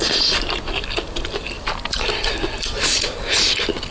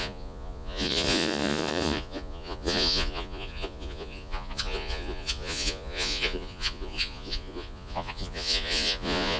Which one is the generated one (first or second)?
second